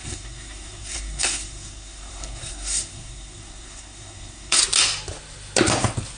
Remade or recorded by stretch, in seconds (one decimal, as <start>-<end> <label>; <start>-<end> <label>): 0.0-4.6 remade; 4.6-6.2 recorded